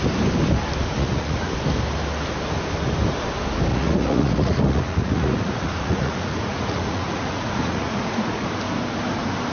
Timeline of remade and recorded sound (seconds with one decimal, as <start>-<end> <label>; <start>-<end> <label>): 0.0-0.9 recorded; 0.9-1.5 remade; 1.5-3.7 recorded; 3.7-8.5 remade; 8.5-9.5 recorded